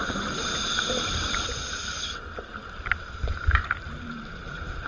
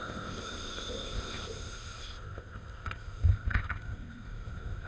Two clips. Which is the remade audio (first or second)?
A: second